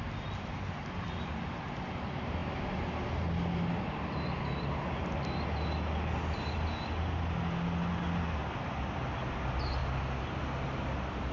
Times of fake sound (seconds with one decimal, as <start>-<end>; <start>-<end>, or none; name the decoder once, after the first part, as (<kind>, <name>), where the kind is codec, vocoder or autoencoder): none